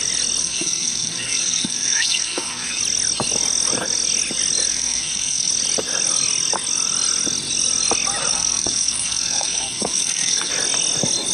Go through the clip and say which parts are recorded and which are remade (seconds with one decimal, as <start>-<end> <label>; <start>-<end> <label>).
0.0-0.4 recorded; 0.4-2.8 remade; 2.8-4.7 recorded; 4.7-5.5 remade; 5.5-8.3 recorded; 8.3-10.5 remade; 10.5-11.3 recorded